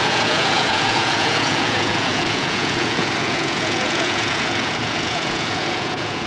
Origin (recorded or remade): remade